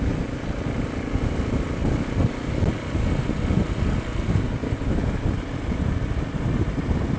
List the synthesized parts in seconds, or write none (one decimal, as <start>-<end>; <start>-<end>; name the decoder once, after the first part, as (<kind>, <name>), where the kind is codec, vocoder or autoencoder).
none

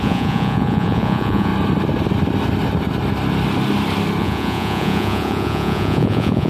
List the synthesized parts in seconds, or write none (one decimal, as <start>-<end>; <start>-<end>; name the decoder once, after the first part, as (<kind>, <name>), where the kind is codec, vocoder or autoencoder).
0.0-1.5 (vocoder, Vocos); 4.2-6.5

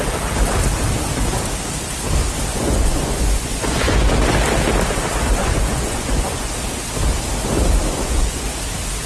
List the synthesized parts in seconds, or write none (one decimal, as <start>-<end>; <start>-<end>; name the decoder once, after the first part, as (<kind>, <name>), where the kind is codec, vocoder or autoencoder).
2.5-4.1 (vocoder, Vocos); 5.4-6.5; 7.9-8.5

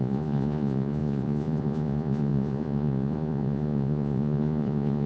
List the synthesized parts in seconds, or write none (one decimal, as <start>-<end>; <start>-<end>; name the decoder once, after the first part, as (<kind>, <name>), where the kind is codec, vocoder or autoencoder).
0.0-5.1 (vocoder, Vocos)

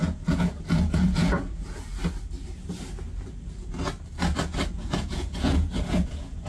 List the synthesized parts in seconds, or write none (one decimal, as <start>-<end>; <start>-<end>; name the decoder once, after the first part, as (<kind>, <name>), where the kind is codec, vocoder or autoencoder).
0.0-1.9 (vocoder, Vocos); 4.7-6.5

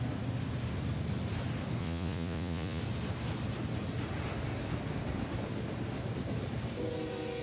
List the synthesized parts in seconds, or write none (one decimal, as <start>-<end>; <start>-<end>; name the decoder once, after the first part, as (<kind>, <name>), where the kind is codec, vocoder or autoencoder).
1.8-2.8 (vocoder, Vocos)

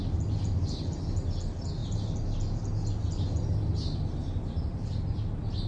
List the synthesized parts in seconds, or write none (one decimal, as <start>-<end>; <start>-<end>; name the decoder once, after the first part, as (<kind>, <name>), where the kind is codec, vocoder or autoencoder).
none

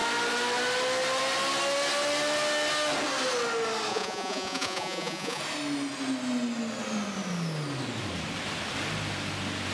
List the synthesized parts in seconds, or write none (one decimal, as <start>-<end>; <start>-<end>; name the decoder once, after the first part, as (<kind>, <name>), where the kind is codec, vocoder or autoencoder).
3.9-5.4 (vocoder, Vocos)